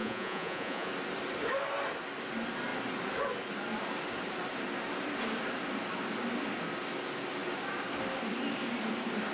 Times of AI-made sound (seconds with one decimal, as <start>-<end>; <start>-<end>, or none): 0.0-0.9